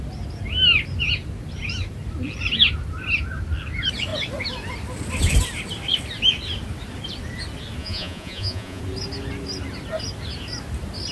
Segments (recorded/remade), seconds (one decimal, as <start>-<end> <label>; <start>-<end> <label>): 0.0-7.8 recorded; 7.8-8.8 remade; 8.8-11.1 recorded